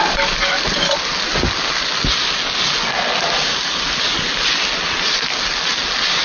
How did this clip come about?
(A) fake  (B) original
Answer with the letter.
B